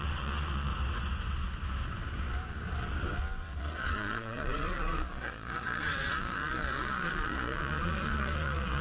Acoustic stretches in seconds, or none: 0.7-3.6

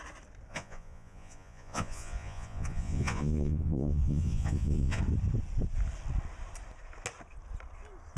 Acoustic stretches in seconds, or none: 0.0-0.5; 5.0-8.2

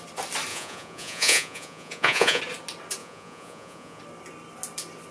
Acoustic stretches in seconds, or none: 0.0-0.5; 2.4-3.0; 4.0-5.1

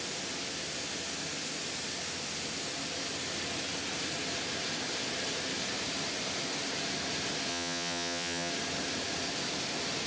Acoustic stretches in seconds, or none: 0.0-7.5; 8.5-10.1

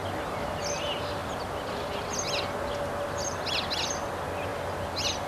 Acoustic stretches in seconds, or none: 0.0-5.3

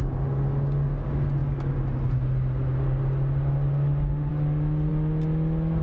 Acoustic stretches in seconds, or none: 0.0-5.8

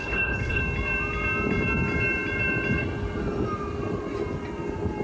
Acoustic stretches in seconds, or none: 0.6-5.0

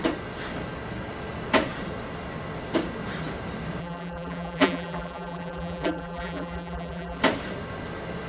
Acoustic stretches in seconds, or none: 0.0-3.8; 7.2-8.3